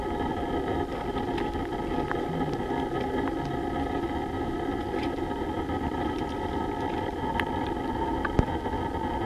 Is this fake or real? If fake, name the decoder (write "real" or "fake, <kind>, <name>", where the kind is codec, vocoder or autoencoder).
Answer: real